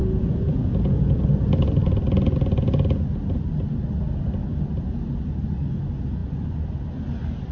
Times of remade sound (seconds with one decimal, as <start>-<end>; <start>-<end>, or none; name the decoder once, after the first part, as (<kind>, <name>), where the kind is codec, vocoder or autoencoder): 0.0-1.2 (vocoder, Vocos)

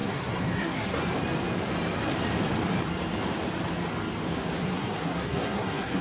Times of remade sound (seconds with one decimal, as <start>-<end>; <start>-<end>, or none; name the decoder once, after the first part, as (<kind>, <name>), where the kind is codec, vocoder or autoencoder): 0.0-1.0 (codec, SNAC); 4.6-6.0

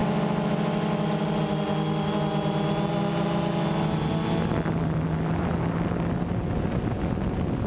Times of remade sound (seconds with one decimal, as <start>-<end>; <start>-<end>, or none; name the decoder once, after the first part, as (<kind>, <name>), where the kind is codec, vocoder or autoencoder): none

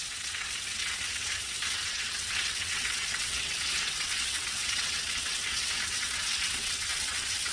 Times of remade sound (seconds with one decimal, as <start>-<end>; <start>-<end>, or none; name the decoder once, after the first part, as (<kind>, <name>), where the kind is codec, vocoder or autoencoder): 0.0-7.5 (vocoder, WaveNeXt)

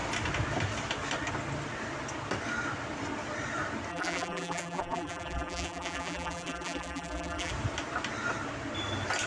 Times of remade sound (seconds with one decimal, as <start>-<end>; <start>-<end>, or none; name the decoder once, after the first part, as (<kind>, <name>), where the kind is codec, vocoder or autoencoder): 3.9-7.5 (vocoder, BigVGAN v2)